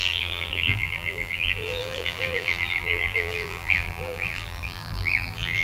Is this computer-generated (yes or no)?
yes